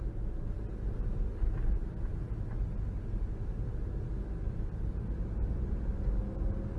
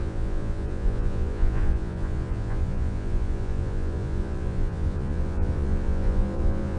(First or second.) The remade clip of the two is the second